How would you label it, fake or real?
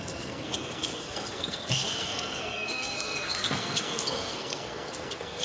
fake